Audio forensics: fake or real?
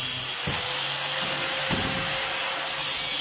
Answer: real